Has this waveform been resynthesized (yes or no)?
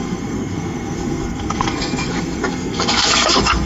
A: yes